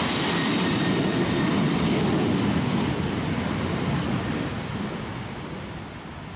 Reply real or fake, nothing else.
real